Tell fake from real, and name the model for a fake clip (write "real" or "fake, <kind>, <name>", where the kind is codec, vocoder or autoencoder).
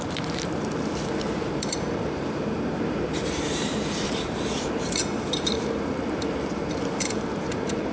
fake, vocoder, BigVGAN v2